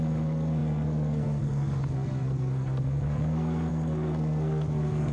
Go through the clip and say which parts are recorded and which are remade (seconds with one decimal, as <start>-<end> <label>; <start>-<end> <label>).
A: 0.0-5.1 remade